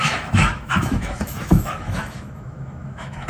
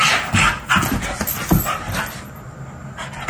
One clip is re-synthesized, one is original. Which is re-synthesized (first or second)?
first